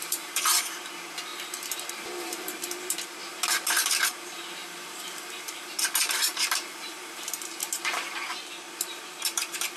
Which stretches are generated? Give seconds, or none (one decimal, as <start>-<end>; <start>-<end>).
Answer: 0.0-1.3; 1.9-9.8